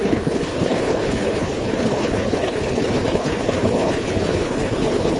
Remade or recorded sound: remade